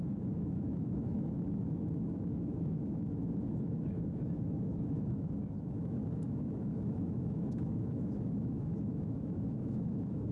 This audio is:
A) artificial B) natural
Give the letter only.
A